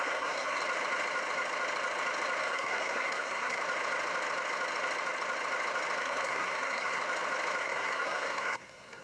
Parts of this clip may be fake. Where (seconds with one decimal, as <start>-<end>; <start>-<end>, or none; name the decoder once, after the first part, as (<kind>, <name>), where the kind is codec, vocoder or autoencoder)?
0.0-0.6 (codec, SNAC); 2.4-3.6; 6.0-7.0; 7.6-9.0